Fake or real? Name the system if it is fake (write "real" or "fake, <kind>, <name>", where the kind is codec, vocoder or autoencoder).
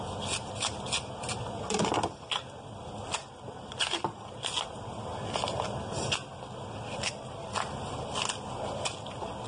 real